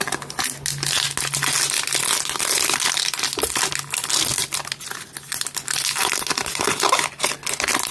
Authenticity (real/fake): real